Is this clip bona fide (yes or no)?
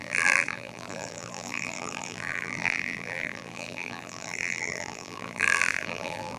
no